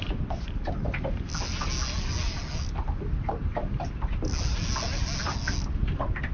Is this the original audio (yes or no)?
yes